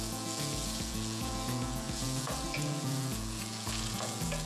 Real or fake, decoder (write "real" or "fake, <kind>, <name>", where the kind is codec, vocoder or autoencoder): fake, vocoder, Vocos